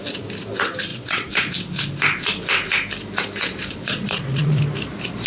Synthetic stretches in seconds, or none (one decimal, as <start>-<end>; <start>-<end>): 0.9-1.5; 3.6-4.6